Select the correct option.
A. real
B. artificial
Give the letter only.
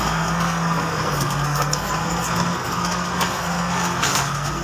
B